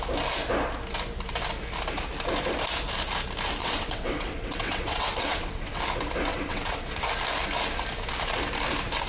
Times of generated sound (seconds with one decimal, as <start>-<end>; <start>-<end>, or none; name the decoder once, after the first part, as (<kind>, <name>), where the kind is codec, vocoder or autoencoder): 3.6-5.8 (vocoder, WaveNeXt); 6.3-7.0